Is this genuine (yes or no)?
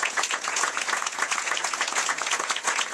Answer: no